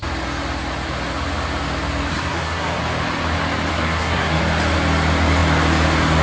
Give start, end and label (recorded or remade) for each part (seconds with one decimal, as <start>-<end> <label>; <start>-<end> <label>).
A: 0.0-2.1 recorded; 2.1-2.8 remade; 2.8-3.7 recorded; 3.7-4.4 remade; 4.4-6.2 recorded